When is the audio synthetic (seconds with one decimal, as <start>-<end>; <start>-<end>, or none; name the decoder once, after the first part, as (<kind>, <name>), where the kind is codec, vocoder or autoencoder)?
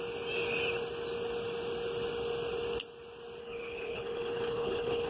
3.4-5.1 (codec, HILCodec)